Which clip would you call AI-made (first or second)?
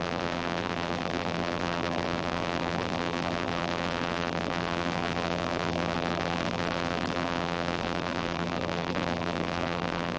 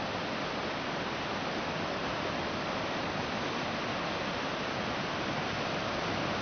first